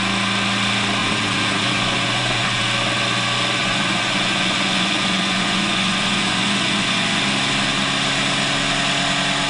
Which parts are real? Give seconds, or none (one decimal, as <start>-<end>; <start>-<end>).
0.0-1.0; 2.6-3.6; 7.2-9.5